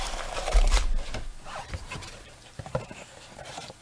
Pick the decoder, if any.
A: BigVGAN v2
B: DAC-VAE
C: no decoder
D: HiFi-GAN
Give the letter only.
A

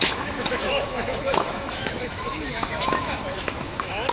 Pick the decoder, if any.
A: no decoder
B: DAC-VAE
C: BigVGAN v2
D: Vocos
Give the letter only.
B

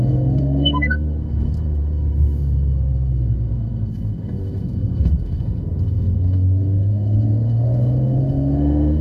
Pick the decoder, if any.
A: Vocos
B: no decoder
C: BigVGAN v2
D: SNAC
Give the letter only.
D